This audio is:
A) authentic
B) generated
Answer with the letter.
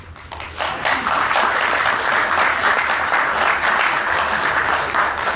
B